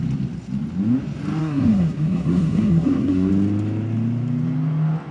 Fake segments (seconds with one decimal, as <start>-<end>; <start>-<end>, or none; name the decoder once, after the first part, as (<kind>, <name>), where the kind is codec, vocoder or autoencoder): 1.4-3.3 (codec, SNAC)